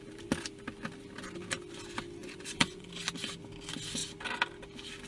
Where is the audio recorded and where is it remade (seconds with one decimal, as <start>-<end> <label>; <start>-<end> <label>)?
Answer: 0.0-2.2 recorded; 2.2-2.9 remade; 2.9-5.1 recorded